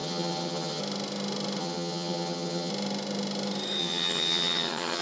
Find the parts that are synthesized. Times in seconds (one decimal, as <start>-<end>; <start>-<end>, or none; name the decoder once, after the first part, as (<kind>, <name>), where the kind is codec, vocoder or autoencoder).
0.0-0.8 (vocoder, HiFi-GAN); 1.6-2.7; 3.8-5.0